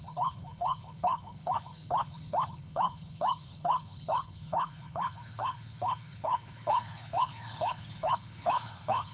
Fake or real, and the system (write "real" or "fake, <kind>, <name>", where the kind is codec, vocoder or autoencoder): fake, codec, HILCodec